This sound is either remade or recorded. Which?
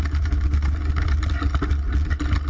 recorded